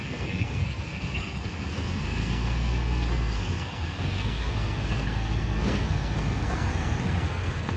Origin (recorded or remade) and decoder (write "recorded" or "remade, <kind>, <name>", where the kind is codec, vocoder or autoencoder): remade, codec, SNAC